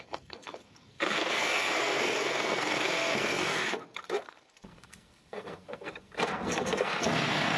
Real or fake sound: fake